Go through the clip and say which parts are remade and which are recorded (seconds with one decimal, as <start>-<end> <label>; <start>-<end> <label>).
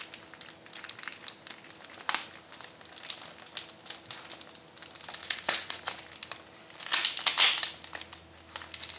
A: 0.0-5.2 recorded; 5.2-6.0 remade; 6.0-9.0 recorded